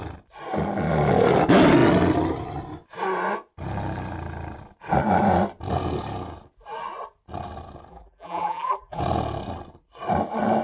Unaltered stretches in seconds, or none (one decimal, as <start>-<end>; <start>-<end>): 0.0-7.9; 9.0-10.6